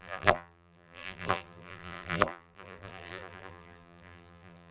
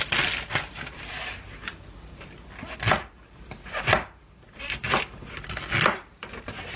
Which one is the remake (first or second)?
first